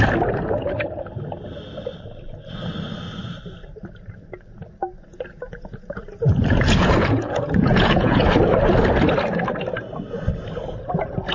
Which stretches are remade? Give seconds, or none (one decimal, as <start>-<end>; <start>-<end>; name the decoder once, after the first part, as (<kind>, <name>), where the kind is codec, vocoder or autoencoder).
5.1-8.2 (vocoder, Vocos)